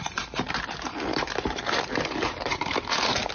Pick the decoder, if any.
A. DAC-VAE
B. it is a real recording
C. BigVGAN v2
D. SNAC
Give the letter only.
C